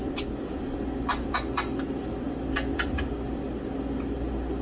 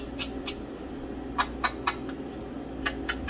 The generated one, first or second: first